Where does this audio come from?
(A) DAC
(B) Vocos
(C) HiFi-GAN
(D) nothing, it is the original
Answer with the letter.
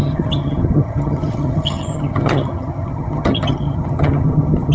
C